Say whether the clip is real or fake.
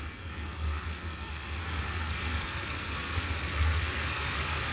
fake